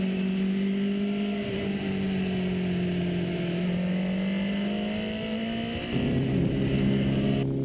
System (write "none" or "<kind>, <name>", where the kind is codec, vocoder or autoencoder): none